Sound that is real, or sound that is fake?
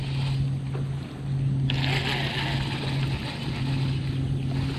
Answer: real